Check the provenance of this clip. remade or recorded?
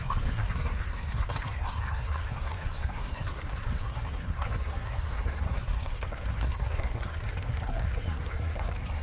remade